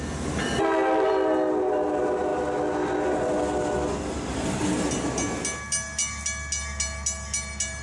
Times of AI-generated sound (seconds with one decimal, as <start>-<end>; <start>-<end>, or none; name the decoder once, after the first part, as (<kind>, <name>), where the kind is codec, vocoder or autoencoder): none